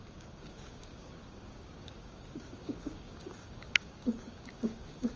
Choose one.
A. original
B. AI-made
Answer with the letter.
B